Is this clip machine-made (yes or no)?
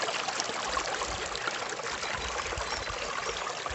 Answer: no